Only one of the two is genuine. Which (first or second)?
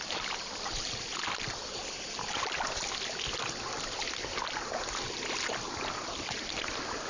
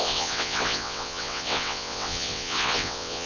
first